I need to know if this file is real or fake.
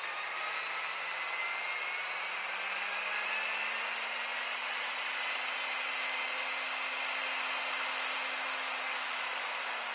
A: real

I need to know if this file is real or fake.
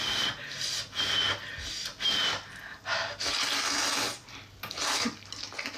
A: real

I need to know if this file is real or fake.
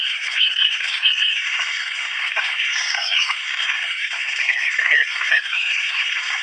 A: fake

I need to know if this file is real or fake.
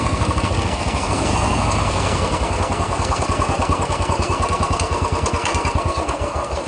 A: fake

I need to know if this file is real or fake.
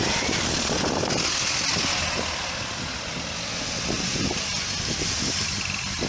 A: real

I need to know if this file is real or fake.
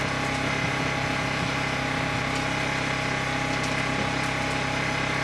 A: real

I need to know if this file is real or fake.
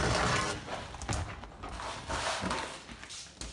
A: real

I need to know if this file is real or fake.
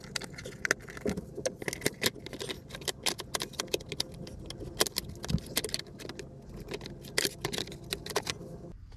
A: real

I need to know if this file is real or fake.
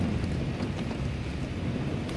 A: real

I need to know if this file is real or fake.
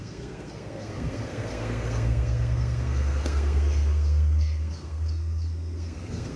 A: fake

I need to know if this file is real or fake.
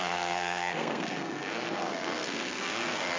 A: fake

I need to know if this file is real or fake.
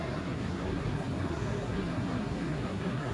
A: fake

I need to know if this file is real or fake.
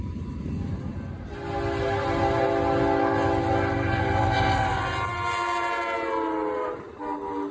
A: real